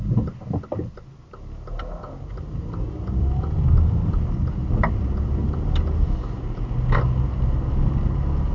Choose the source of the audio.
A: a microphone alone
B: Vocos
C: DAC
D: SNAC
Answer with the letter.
A